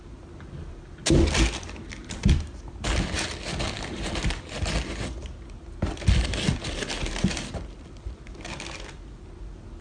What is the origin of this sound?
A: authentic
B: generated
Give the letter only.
A